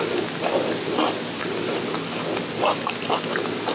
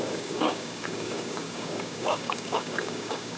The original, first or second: first